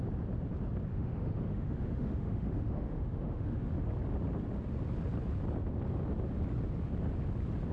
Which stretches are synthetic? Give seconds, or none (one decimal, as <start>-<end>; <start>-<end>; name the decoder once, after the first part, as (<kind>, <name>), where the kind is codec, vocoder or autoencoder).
0.9-3.7 (autoencoder, DAC-VAE)